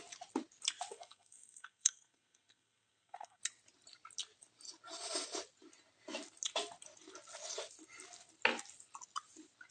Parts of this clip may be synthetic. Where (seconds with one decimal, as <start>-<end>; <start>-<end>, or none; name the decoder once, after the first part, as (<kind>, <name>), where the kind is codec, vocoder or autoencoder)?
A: 0.9-3.4 (codec, SNAC)